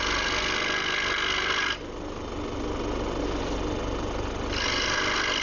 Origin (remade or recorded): recorded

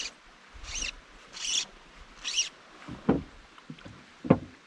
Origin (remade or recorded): recorded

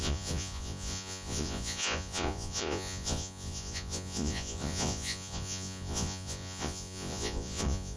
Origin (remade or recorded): remade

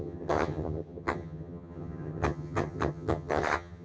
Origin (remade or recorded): remade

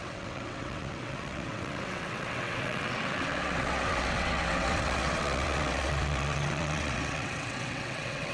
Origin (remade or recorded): remade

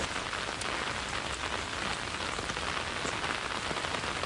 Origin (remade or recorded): recorded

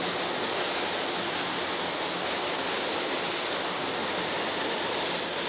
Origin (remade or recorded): recorded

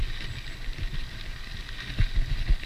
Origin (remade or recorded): recorded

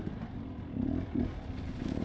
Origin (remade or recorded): recorded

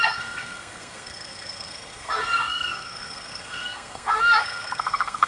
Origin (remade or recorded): remade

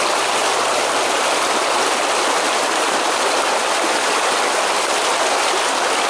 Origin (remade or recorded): recorded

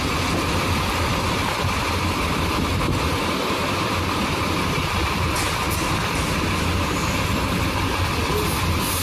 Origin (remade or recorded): recorded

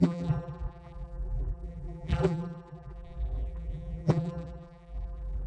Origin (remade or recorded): remade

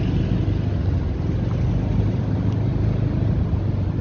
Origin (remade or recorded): recorded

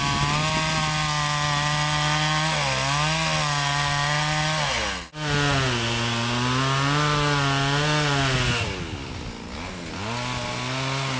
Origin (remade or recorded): recorded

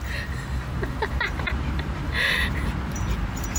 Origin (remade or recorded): remade